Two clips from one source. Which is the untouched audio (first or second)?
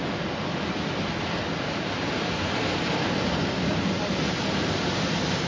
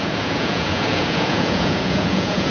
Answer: first